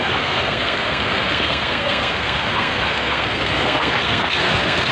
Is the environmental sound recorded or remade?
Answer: remade